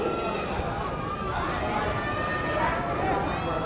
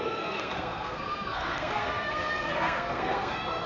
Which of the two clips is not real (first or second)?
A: second